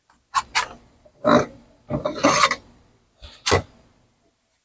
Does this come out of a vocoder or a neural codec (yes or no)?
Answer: no